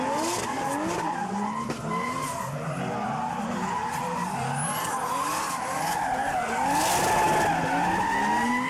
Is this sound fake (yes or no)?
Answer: no